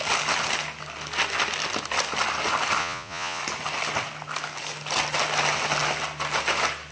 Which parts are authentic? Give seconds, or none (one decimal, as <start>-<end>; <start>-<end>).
0.0-2.8; 3.4-6.9